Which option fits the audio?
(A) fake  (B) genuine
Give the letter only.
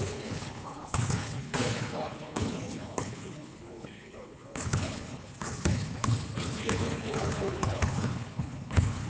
A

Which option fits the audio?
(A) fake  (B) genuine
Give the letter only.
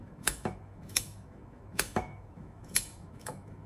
A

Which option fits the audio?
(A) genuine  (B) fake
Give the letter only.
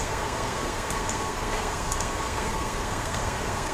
B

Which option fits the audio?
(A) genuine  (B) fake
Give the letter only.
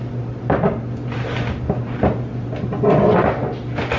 A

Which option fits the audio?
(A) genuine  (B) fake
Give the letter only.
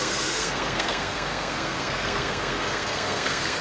B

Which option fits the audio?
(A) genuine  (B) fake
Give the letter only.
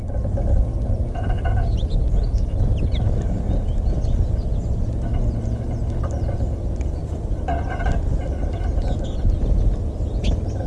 A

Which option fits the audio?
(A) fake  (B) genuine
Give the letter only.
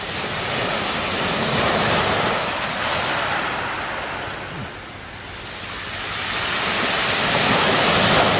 B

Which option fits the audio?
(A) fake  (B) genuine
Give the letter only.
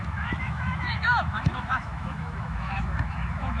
A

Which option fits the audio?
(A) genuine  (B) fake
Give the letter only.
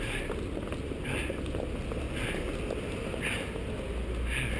A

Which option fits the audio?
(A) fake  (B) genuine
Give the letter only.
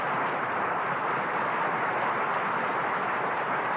B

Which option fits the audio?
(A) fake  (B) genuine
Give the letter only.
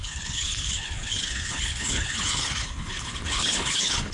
A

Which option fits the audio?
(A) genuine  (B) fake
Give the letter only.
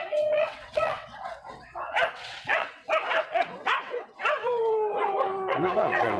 B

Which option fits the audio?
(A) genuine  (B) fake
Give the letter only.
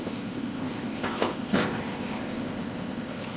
B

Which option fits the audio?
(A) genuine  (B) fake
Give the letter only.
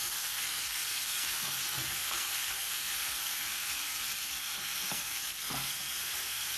B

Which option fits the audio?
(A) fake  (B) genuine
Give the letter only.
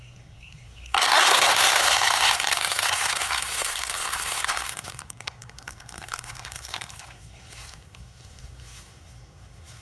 A